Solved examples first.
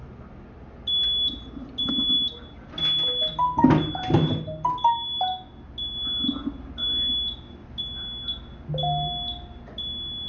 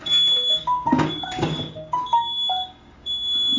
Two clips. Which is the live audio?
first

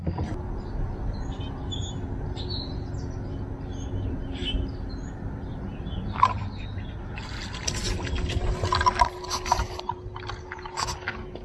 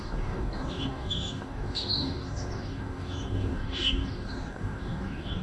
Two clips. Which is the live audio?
first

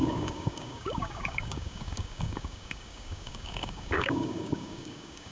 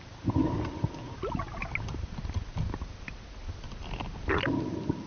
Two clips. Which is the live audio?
second